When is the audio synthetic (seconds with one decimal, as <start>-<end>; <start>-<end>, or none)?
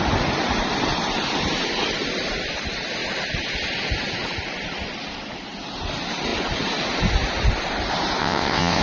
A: 8.2-8.8